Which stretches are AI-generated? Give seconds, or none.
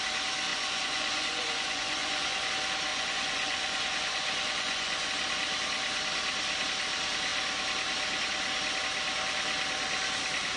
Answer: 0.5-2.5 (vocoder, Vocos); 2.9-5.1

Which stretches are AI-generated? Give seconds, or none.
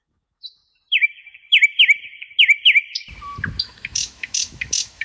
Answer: 0.0-0.6 (autoencoder, DAC-VAE); 3.6-5.0